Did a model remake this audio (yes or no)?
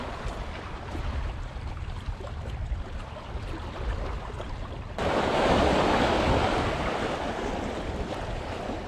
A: yes